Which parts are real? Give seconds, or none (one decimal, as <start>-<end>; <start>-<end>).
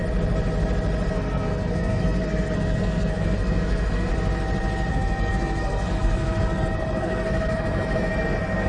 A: 0.0-1.1; 4.1-4.9